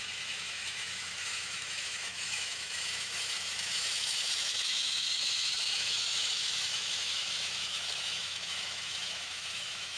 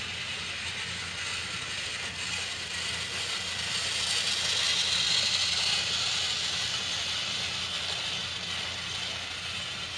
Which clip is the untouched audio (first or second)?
second